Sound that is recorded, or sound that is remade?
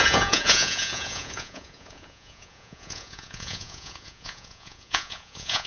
remade